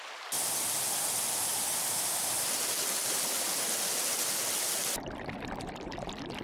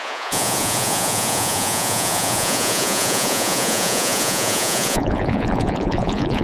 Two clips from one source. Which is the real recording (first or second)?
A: first